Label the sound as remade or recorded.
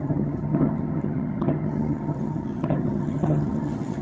remade